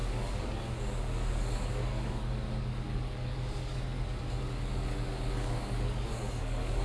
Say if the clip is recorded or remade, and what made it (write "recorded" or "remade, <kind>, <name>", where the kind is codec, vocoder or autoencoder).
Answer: remade, codec, DAC